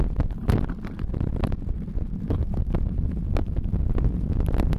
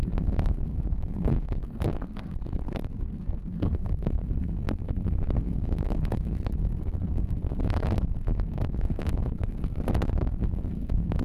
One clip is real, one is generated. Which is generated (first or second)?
second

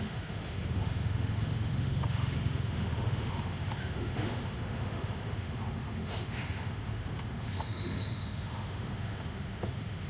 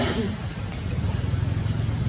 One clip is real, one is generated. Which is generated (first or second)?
first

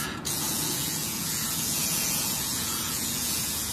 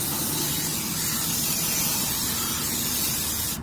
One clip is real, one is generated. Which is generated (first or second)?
first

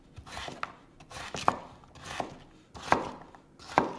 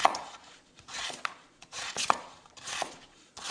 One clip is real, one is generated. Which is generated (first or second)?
second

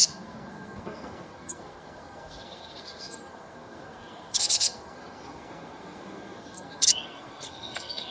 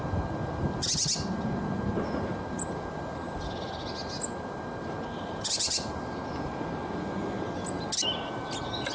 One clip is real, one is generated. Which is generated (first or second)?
first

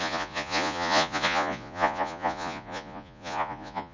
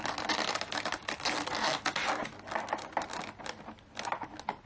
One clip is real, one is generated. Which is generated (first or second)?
first